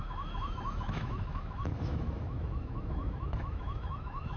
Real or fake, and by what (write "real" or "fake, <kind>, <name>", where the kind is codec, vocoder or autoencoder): fake, autoencoder, DAC-VAE